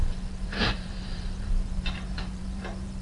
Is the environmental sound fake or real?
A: fake